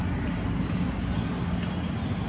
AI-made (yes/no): no